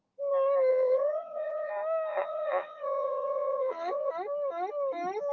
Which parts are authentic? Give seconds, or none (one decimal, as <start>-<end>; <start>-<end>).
0.0-0.7; 1.7-2.1; 4.1-5.3